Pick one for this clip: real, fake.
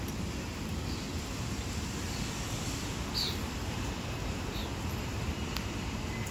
real